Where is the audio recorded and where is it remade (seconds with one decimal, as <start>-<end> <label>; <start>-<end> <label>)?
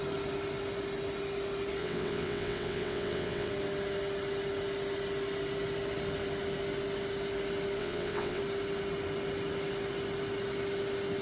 0.0-1.8 recorded; 1.8-3.5 remade; 3.5-7.8 recorded; 7.8-8.4 remade; 8.4-11.2 recorded